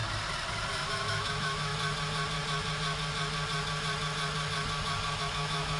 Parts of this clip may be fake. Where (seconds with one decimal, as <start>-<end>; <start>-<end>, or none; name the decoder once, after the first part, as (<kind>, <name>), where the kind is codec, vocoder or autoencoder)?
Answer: 1.1-1.7 (autoencoder, DAC-VAE); 5.2-5.8